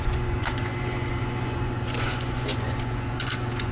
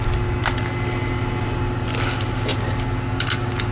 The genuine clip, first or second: second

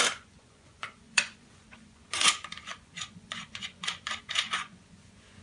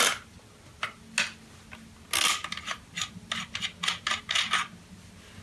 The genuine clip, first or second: second